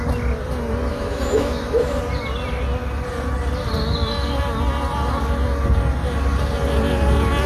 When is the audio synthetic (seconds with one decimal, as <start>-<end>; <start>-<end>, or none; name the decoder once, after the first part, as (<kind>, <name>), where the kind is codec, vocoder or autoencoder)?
0.9-2.0 (autoencoder, DAC-VAE)